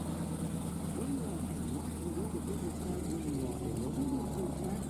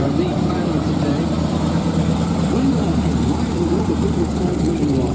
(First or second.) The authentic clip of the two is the first